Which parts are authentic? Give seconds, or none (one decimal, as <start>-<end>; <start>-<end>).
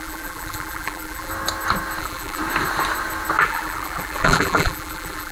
1.3-2.0; 2.4-3.4